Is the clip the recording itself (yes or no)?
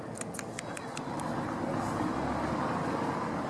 yes